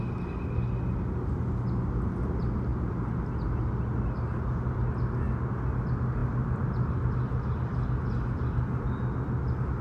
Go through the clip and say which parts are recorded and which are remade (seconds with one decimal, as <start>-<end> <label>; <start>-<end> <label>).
0.0-9.8 recorded